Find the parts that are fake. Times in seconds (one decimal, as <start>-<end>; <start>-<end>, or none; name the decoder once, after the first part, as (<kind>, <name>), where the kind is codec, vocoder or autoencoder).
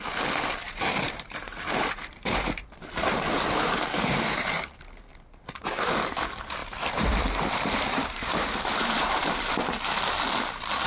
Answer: 0.6-5.1 (vocoder, BigVGAN v2); 6.6-9.5